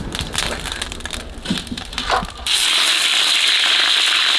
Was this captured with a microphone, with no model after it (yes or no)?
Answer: yes